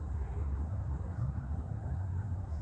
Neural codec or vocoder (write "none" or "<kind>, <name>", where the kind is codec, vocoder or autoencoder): codec, SNAC